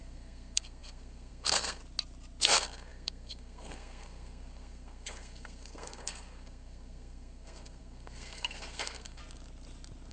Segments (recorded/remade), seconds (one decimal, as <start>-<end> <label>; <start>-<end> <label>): 0.0-1.8 remade; 1.8-2.4 recorded; 2.4-9.2 remade; 9.2-10.1 recorded